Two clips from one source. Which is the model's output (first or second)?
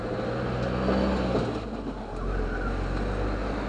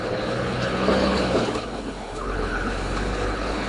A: second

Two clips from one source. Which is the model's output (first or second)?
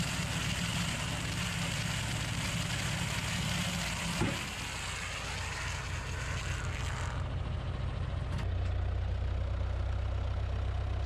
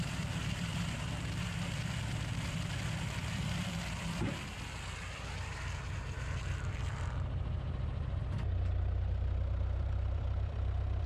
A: second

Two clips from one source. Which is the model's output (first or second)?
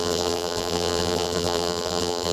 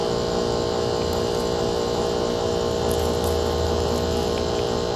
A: first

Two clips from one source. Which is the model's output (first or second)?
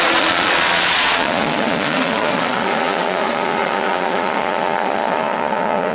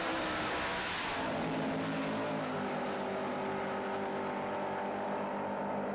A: first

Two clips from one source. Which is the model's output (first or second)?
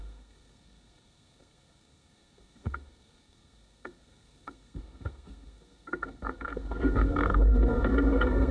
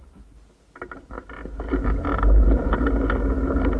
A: first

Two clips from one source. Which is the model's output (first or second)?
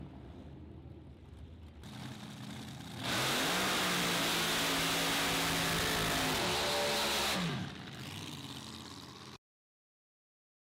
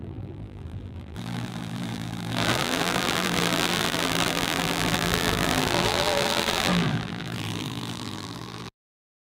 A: second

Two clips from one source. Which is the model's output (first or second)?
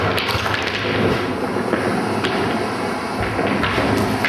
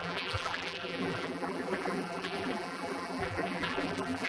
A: second